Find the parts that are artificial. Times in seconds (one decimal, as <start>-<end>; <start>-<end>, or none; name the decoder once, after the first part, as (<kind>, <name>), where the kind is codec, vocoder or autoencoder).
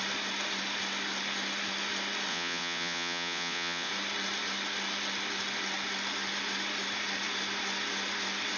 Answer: 2.3-3.9 (vocoder, Vocos)